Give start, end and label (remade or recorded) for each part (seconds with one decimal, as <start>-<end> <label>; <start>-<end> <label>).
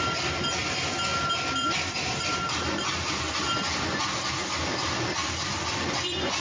0.0-6.4 recorded